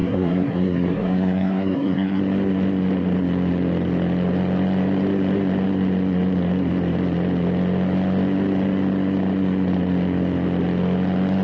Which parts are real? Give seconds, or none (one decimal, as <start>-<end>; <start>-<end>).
2.2-11.4